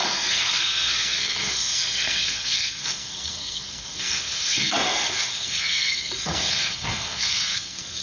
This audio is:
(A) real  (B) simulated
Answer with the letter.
B